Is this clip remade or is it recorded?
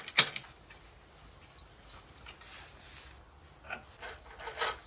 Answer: recorded